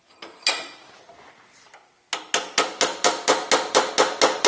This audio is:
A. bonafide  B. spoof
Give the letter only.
A